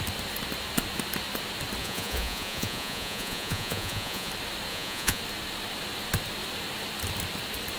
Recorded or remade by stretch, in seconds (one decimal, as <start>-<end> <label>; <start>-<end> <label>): 0.0-1.8 recorded; 1.8-4.3 remade; 4.3-4.7 recorded; 4.7-5.2 remade; 5.2-7.8 recorded